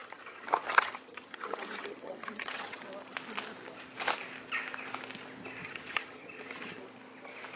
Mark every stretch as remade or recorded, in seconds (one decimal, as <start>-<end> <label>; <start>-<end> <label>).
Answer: 0.0-2.8 remade; 2.8-5.6 recorded; 5.6-6.8 remade; 6.8-7.6 recorded